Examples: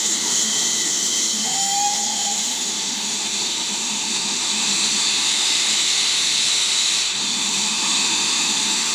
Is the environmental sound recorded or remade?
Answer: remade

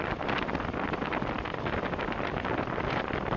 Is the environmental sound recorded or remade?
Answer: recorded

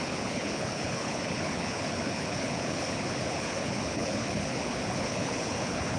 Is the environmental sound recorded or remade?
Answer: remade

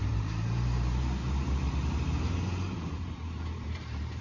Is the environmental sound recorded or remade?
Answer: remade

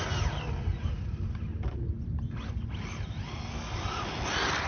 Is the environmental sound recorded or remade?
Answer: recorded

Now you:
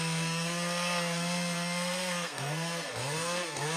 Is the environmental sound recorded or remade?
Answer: remade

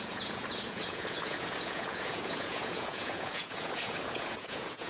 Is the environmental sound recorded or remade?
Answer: remade